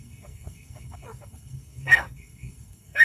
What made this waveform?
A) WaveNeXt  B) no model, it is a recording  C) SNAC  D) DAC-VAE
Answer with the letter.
C